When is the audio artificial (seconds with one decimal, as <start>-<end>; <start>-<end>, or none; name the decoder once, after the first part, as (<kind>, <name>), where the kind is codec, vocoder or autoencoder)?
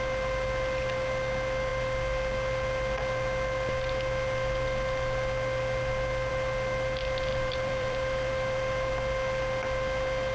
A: 7.3-8.9 (vocoder, BigVGAN v2)